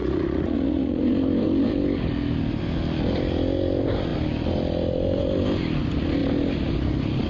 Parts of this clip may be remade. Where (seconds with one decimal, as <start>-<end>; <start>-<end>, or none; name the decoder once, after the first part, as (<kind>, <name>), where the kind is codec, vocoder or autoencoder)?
0.0-1.0 (vocoder, Vocos)